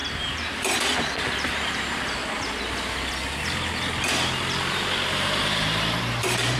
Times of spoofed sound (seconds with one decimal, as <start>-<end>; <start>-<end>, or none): 0.0-2.2; 5.1-6.6